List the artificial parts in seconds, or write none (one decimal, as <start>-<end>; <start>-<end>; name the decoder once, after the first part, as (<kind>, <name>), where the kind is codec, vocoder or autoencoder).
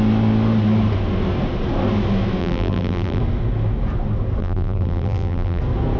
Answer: 2.4-3.2 (vocoder, BigVGAN v2); 4.4-5.6